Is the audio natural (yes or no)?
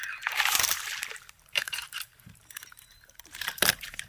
no